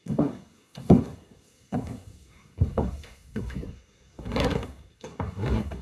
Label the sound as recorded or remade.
remade